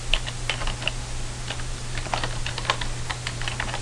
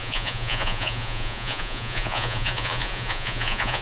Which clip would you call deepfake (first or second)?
second